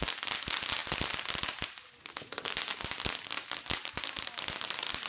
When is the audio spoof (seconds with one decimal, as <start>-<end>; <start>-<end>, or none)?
none

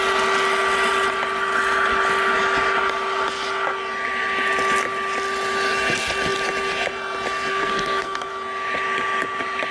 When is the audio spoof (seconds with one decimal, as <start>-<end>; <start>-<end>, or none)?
7.5-8.3

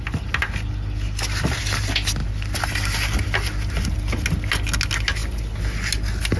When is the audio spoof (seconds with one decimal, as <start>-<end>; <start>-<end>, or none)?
none

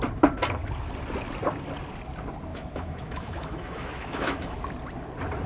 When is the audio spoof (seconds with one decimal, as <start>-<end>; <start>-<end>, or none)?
2.5-4.6

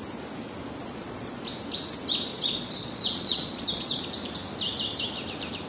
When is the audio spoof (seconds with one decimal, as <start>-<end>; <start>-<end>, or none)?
0.8-1.4; 2.3-4.0